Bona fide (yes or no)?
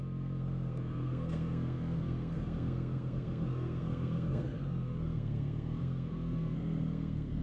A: no